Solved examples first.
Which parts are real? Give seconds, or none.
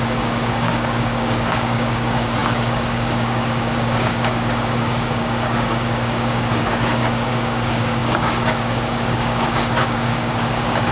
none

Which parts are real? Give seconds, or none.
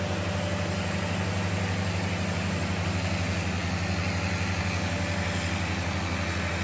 0.0-6.6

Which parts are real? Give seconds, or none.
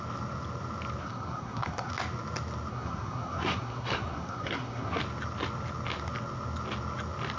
0.0-1.0; 1.9-2.7; 5.0-7.4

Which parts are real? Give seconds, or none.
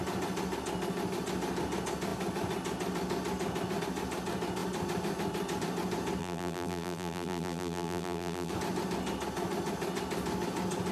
0.0-6.2; 8.5-10.9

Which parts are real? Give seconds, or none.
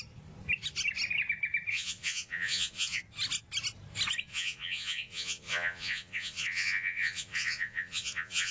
0.0-1.7; 3.0-4.3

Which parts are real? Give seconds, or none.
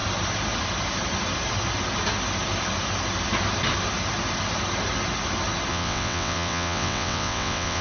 0.0-5.7